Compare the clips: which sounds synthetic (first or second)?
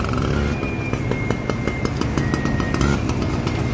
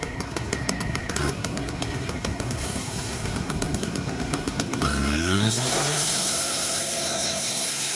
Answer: second